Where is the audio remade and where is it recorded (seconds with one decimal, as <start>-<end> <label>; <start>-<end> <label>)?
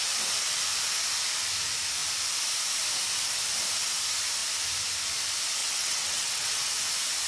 0.0-5.6 recorded; 5.6-6.7 remade; 6.7-7.3 recorded